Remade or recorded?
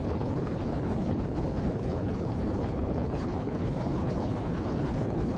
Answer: remade